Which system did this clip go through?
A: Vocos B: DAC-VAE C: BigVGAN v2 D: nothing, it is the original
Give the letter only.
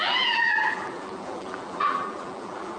C